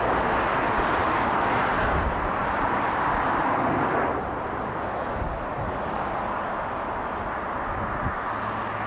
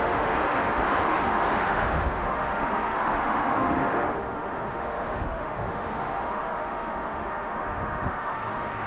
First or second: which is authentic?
first